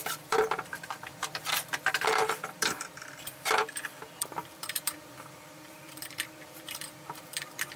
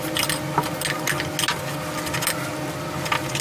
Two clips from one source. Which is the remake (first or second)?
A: first